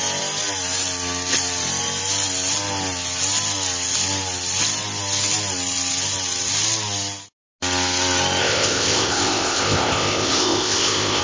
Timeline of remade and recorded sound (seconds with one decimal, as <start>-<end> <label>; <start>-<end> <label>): 0.0-8.4 recorded; 8.4-11.2 remade